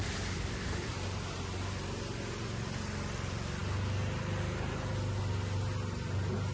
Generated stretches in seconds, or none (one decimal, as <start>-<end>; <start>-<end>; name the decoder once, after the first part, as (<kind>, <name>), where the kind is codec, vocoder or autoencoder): none